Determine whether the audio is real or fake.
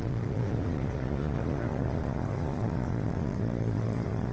fake